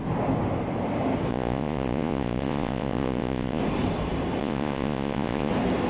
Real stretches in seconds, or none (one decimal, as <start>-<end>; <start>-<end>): 0.0-1.3; 3.6-4.4; 5.5-5.9

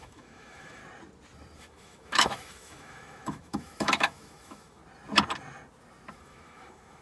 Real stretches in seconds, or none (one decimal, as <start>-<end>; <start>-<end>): 0.8-1.6; 4.8-6.1

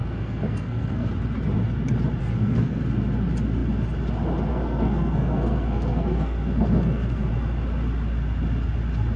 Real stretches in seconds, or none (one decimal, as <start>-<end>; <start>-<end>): 1.1-2.2; 2.8-4.5; 7.3-9.2